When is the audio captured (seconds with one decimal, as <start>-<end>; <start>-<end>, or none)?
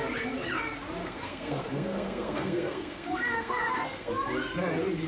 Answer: 0.0-1.0; 4.1-5.1